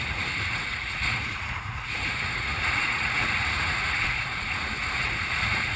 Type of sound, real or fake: fake